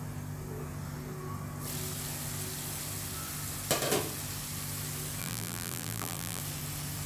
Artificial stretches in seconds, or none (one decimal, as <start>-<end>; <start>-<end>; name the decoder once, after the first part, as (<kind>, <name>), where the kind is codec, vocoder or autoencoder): 5.2-6.4 (vocoder, BigVGAN v2)

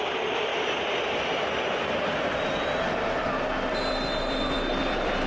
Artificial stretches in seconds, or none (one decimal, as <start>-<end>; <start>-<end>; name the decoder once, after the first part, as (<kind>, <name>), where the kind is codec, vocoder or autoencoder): 0.0-0.5 (vocoder, BigVGAN v2); 3.4-5.3

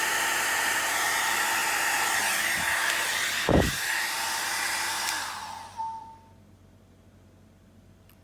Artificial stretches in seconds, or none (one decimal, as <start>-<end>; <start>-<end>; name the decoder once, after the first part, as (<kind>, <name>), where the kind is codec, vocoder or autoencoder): none

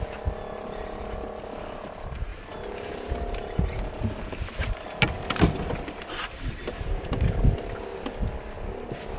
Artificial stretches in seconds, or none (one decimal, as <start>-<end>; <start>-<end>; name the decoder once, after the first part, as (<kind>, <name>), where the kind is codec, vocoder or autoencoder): none

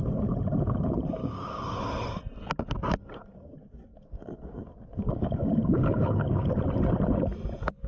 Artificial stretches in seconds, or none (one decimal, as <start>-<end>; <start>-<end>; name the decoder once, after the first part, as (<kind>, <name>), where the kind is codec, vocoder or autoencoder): 1.2-1.9 (codec, DAC); 3.9-6.5